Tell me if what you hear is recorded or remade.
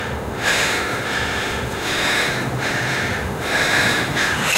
remade